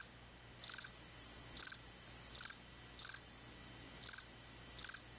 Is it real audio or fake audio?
real